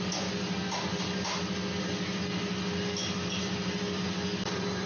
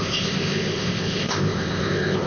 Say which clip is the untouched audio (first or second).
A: first